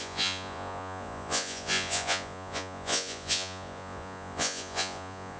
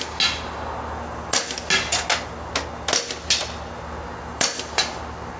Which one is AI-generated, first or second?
first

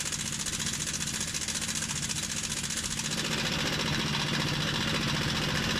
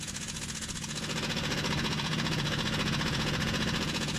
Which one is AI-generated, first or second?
second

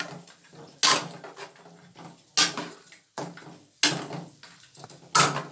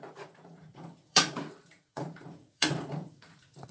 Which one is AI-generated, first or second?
second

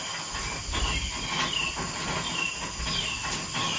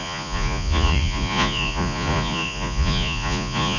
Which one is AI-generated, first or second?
second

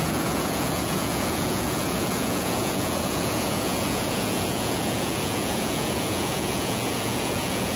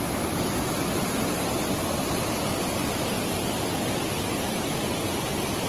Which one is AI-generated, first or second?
first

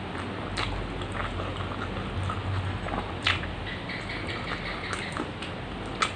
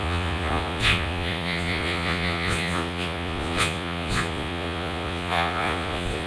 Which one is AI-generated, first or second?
second